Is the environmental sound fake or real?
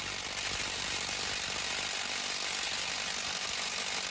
real